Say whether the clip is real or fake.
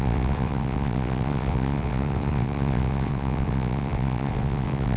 fake